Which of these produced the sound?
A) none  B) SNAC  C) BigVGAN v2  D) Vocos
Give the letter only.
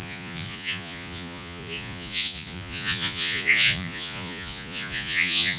D